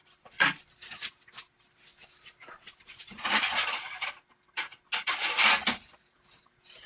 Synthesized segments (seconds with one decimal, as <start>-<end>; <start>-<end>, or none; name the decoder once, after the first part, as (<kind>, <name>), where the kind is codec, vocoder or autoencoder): 0.0-1.1 (vocoder, BigVGAN v2); 1.9-6.0